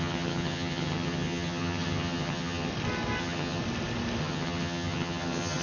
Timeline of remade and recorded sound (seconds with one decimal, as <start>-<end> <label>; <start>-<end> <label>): 0.0-2.7 remade; 2.7-3.2 recorded; 3.2-3.6 remade; 3.6-4.2 recorded; 4.2-5.6 remade